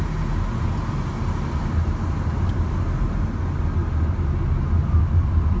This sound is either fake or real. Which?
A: real